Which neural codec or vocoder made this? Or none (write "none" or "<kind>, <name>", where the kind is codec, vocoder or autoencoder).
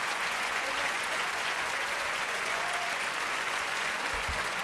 vocoder, Vocos